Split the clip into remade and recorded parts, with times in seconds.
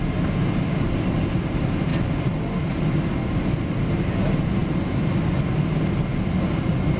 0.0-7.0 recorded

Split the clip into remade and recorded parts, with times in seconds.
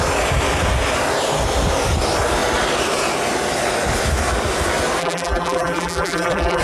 0.0-5.0 recorded; 5.0-6.6 remade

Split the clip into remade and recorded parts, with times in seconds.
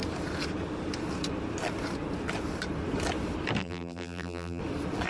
0.0-3.6 recorded; 3.6-4.6 remade; 4.6-5.1 recorded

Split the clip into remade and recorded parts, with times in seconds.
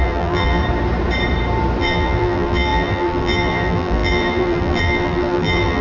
0.0-0.6 remade; 0.6-1.8 recorded; 1.8-5.8 remade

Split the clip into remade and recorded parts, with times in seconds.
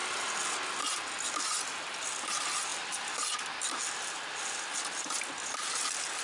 0.0-6.2 recorded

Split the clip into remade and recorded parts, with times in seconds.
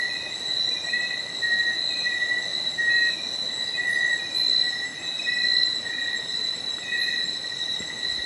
0.0-2.5 recorded; 2.5-3.1 remade; 3.1-6.4 recorded; 6.4-7.8 remade; 7.8-8.3 recorded